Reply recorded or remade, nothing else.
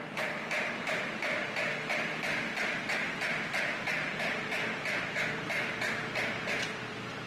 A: remade